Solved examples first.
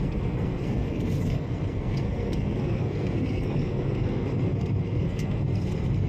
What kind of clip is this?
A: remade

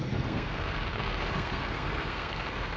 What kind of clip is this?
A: remade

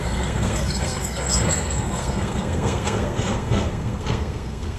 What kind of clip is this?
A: remade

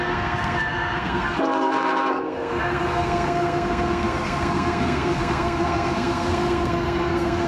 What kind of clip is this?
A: remade